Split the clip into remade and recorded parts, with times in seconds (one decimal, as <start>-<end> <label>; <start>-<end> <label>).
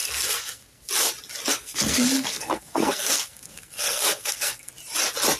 0.0-0.9 remade; 0.9-1.5 recorded; 1.5-4.7 remade; 4.7-5.4 recorded